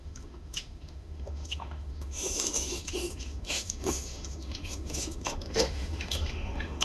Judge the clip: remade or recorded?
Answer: remade